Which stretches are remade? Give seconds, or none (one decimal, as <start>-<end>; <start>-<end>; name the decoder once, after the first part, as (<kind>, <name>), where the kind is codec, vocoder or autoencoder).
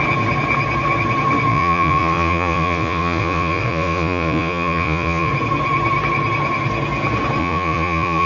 1.5-5.3 (vocoder, Vocos); 7.4-8.3